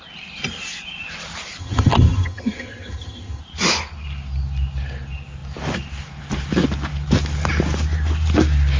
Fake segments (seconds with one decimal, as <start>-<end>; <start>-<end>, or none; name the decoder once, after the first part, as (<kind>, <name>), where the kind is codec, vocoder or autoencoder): 1.6-3.4 (vocoder, HiFi-GAN)